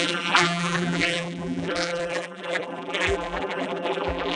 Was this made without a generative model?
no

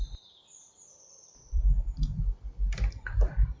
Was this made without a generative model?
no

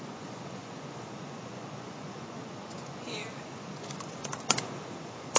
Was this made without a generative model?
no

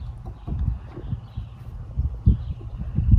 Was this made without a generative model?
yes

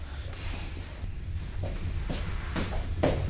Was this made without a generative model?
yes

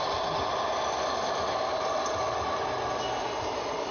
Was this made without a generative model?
yes